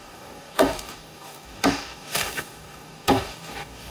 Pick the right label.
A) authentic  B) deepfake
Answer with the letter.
B